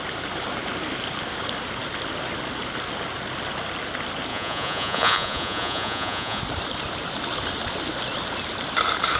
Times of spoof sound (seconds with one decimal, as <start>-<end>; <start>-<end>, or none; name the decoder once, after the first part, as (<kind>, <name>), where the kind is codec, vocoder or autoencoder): 4.3-6.4 (vocoder, Vocos)